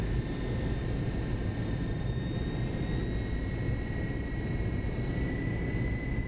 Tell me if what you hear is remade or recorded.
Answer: recorded